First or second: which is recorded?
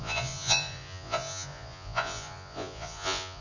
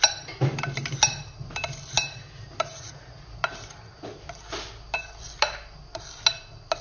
second